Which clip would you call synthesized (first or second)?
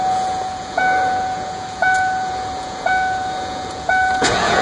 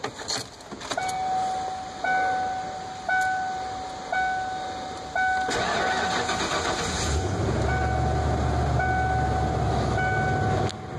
first